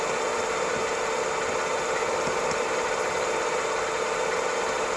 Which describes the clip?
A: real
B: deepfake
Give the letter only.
A